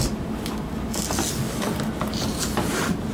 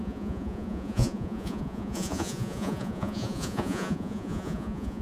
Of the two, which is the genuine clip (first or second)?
first